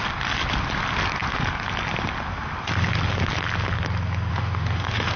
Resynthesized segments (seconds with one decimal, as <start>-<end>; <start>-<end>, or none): 4.3-5.2